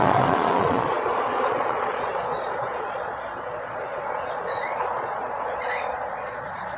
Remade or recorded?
remade